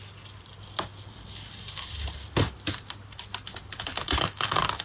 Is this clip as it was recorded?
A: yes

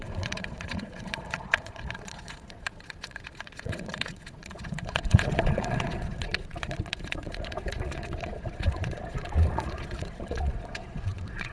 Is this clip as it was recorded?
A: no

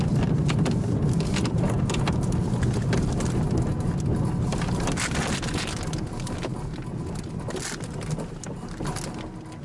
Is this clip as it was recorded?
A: yes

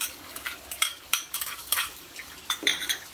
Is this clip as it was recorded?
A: no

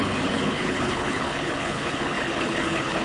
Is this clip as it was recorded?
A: no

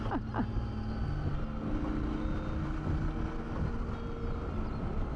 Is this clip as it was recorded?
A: yes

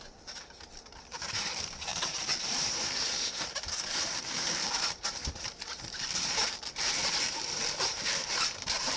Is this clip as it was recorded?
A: no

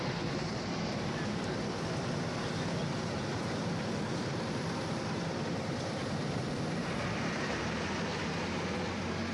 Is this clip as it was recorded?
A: no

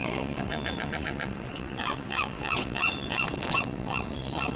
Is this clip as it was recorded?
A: no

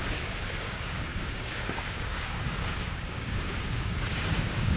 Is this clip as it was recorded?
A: no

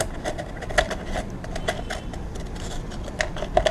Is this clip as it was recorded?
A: yes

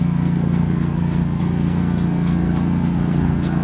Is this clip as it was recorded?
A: no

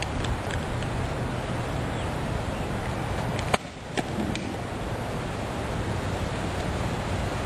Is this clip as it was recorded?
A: yes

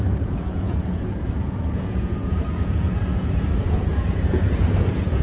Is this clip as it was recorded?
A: no